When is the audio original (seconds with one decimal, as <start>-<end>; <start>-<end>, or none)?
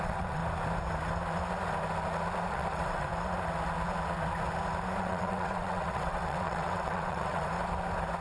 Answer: 0.4-2.5; 3.1-5.0; 7.5-8.2